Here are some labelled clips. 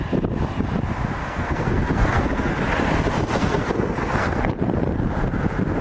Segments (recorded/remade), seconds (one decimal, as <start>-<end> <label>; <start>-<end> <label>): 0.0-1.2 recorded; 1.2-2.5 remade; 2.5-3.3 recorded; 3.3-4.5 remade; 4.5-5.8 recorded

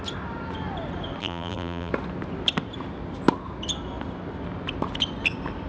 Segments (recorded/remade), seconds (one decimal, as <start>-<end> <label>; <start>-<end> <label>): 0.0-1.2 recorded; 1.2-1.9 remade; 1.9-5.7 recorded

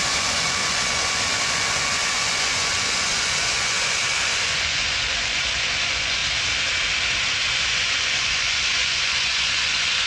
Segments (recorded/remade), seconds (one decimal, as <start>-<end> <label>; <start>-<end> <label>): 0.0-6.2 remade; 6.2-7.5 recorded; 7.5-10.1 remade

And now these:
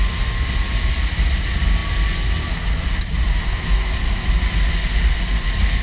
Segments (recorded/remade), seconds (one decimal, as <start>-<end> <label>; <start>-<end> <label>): 0.0-5.8 recorded